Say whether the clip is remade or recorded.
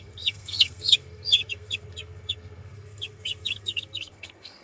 remade